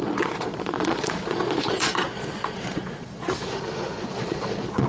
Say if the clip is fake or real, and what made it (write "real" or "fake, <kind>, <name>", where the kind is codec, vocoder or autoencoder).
fake, vocoder, Vocos